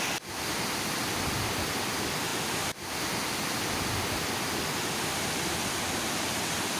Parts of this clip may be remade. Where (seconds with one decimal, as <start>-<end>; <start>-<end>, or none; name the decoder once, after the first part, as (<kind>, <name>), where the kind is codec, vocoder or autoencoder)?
0.0-6.8 (vocoder, BigVGAN v2)

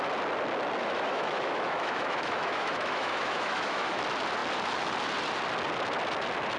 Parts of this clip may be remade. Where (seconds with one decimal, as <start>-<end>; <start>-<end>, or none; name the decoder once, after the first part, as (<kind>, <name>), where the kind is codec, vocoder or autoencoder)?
0.8-4.0 (autoencoder, DAC-VAE)

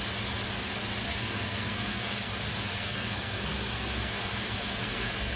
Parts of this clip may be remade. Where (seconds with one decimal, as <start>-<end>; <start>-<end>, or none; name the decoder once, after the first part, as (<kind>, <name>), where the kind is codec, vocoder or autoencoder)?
1.1-2.3 (codec, SNAC); 2.7-5.4

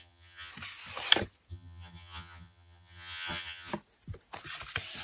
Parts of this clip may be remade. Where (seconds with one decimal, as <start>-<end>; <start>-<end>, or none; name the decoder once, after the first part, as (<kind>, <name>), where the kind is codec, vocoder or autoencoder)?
0.0-0.5 (vocoder, HiFi-GAN); 1.5-3.7

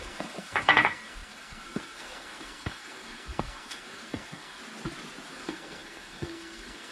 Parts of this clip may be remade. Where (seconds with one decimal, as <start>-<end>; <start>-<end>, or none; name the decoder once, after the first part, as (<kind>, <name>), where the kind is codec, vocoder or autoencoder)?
0.0-4.6 (codec, SNAC); 5.3-6.9

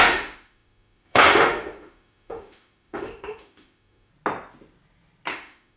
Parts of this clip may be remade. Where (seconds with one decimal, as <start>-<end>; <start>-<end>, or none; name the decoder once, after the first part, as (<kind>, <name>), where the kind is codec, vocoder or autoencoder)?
0.0-4.1 (autoencoder, DAC-VAE); 5.3-5.8

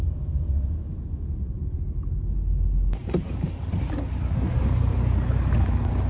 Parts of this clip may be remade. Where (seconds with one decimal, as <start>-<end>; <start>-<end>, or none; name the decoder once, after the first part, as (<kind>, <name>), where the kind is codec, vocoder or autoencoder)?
3.0-3.7 (vocoder, BigVGAN v2)

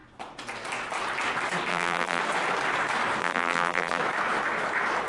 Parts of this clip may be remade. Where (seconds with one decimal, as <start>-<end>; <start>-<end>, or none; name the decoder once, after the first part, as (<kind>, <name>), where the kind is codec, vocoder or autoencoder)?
1.7-2.2 (vocoder, BigVGAN v2); 3.2-4.0